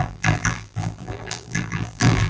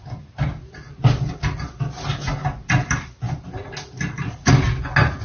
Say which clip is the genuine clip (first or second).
second